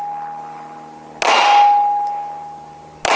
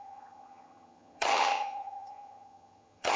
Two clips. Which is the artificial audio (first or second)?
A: second